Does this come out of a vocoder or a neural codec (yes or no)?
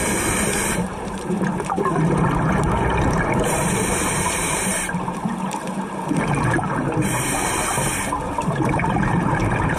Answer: yes